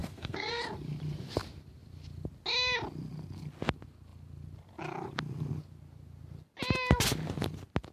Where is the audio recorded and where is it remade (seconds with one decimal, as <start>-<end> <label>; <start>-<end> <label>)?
0.0-0.6 remade; 0.6-7.9 recorded